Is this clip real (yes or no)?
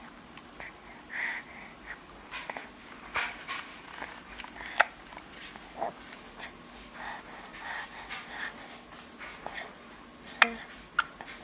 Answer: yes